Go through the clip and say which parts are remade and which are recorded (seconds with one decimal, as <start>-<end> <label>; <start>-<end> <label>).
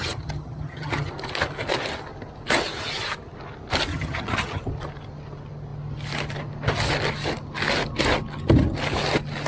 0.0-1.1 remade; 1.1-3.9 recorded; 3.9-4.6 remade; 4.6-9.5 recorded